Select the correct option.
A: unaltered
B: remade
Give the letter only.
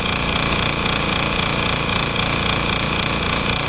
B